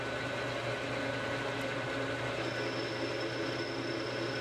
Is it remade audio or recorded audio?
recorded